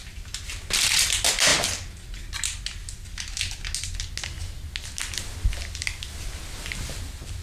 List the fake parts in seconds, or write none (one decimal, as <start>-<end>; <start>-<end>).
none